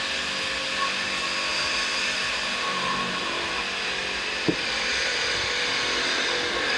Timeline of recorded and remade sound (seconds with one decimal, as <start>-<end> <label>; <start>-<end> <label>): 0.0-1.5 recorded; 1.5-3.6 remade; 3.6-6.8 recorded